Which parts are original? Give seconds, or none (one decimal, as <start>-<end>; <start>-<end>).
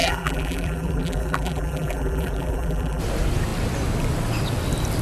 3.0-5.0